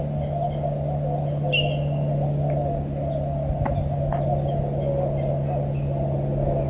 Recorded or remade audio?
recorded